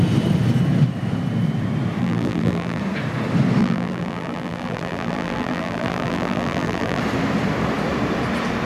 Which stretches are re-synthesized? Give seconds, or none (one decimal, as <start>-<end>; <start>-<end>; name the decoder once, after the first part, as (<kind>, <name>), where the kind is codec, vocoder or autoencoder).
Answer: 2.0-2.8 (vocoder, BigVGAN v2); 3.6-7.0